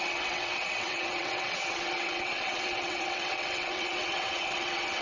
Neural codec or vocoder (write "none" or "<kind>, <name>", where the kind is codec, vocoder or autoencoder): vocoder, WaveNeXt